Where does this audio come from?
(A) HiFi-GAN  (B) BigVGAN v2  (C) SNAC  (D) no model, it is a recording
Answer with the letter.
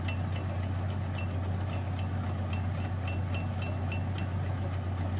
D